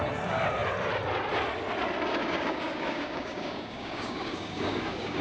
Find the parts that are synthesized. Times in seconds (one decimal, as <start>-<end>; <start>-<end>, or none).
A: 2.1-5.2